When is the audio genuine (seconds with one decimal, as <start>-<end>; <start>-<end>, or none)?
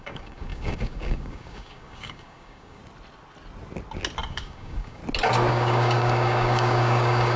2.8-4.3; 5.0-5.5